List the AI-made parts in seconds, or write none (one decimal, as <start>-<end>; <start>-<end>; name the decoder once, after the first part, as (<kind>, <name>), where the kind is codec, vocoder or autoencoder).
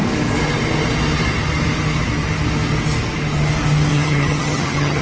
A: 3.9-5.0 (vocoder, HiFi-GAN)